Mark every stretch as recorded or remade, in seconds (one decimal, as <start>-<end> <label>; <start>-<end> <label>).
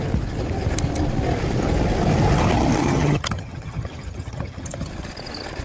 0.0-2.8 recorded; 2.8-4.9 remade; 4.9-5.6 recorded